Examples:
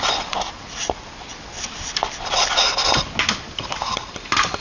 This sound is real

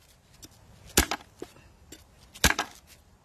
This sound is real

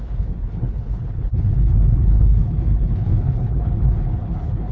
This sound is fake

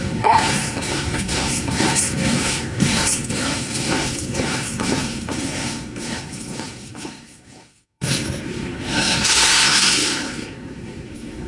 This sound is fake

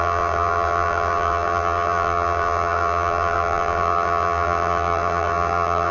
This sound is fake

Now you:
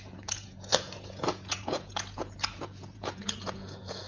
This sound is fake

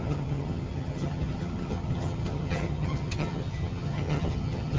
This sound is fake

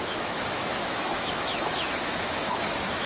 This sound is fake